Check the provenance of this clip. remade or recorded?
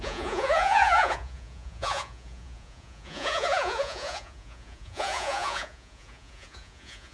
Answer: remade